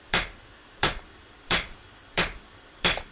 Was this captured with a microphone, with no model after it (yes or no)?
no